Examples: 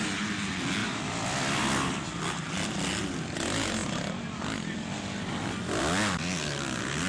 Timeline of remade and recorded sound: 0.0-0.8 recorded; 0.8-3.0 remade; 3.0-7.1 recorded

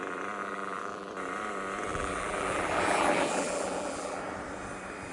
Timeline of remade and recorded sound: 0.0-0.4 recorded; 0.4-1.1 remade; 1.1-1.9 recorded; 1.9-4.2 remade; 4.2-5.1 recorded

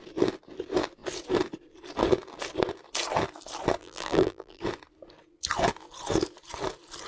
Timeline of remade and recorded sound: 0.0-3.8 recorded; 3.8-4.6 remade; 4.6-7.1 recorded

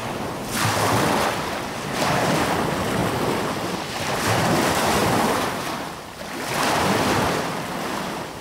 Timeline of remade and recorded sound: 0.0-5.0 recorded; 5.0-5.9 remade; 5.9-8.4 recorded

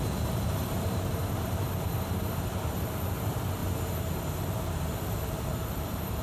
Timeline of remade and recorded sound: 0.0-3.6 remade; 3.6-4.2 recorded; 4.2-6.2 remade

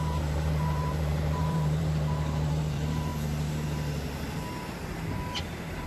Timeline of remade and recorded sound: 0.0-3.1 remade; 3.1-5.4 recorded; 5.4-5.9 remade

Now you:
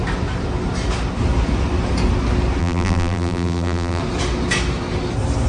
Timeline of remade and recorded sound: 0.0-2.6 recorded; 2.6-4.0 remade; 4.0-5.5 recorded

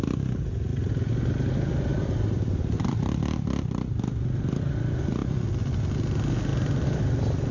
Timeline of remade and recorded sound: 0.0-0.7 recorded; 0.7-1.3 remade; 1.3-1.9 recorded; 1.9-4.6 remade; 4.6-5.2 recorded; 5.2-5.8 remade; 5.8-6.5 recorded; 6.5-7.5 remade